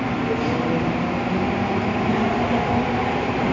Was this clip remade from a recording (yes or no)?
no